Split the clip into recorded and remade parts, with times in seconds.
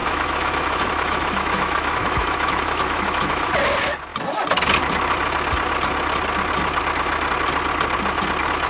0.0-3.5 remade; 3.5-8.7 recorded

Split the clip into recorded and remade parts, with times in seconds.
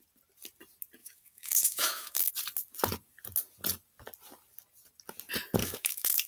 0.0-1.0 recorded; 1.0-2.3 remade; 2.3-5.6 recorded; 5.6-6.3 remade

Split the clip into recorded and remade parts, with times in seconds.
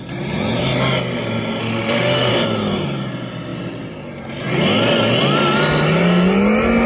0.0-1.6 recorded; 1.6-2.3 remade; 2.3-6.9 recorded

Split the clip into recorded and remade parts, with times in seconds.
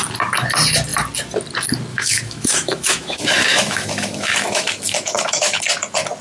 0.0-1.9 recorded; 1.9-5.6 remade; 5.6-6.2 recorded